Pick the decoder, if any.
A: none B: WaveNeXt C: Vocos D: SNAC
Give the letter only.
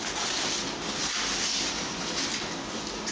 A